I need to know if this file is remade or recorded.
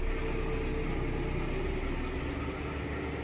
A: recorded